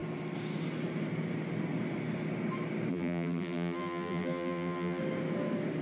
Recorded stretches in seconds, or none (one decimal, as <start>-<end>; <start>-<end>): 0.0-2.9; 5.0-5.8